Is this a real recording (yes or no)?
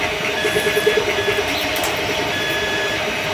yes